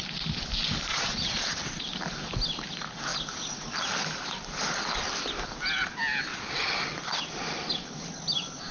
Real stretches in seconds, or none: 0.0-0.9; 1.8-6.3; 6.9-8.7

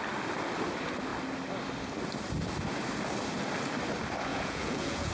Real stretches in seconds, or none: 0.0-4.3

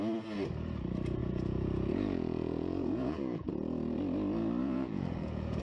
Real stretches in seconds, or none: 0.0-1.2; 3.5-4.6

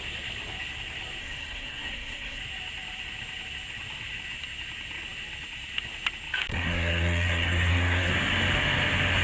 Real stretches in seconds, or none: 0.0-1.2; 2.4-6.5; 8.1-9.2

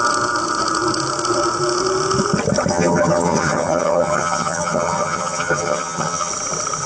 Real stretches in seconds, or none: 0.0-2.7; 6.3-6.9

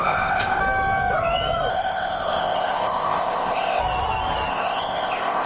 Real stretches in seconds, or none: 0.6-1.7; 3.8-4.5

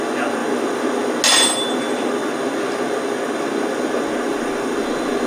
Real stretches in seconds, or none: 0.0-5.3